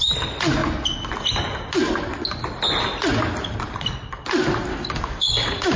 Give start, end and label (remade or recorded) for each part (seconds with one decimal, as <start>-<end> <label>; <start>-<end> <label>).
0.0-4.7 recorded; 4.7-5.8 remade